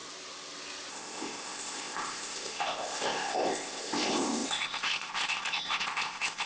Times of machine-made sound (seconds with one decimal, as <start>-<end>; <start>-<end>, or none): 0.9-6.5